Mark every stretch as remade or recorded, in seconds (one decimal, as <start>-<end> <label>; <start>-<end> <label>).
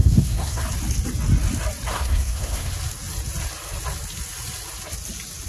0.0-0.6 remade; 0.6-1.9 recorded; 1.9-2.7 remade; 2.7-5.5 recorded